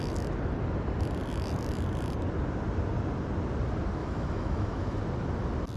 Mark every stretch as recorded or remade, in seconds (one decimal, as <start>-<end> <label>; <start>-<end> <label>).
0.0-4.0 recorded; 4.0-5.0 remade; 5.0-5.8 recorded